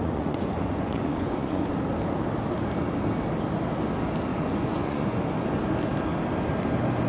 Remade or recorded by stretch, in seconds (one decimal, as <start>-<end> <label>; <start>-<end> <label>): 0.0-1.7 remade; 1.7-4.3 recorded; 4.3-5.2 remade; 5.2-7.1 recorded